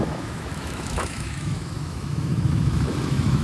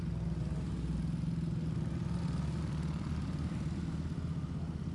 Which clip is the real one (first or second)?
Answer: second